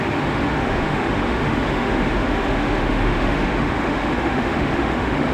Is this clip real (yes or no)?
no